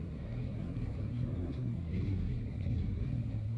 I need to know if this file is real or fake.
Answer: fake